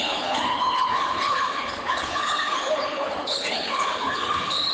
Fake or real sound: fake